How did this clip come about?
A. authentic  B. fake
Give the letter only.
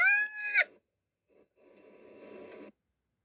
A